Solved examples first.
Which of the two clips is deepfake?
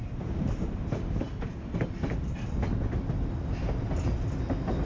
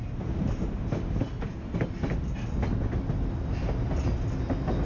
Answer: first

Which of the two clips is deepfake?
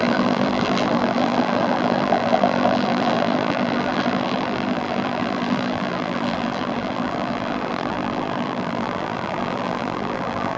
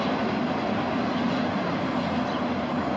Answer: first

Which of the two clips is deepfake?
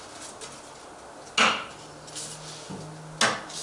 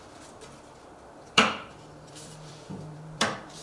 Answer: second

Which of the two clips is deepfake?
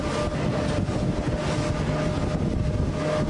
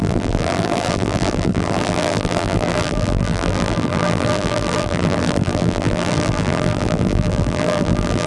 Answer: second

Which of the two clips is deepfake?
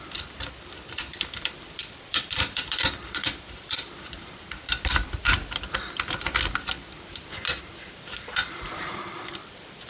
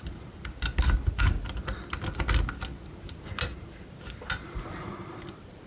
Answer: first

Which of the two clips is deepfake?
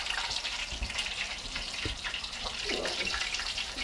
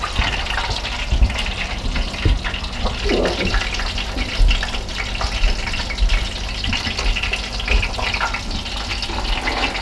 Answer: first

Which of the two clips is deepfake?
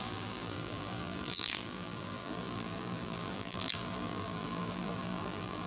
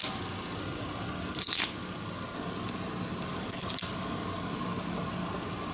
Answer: first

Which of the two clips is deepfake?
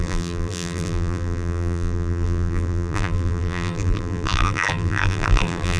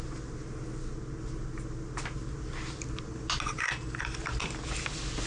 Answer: first